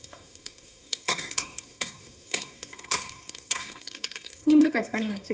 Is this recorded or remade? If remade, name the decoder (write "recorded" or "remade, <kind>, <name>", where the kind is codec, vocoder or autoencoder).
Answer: remade, codec, SNAC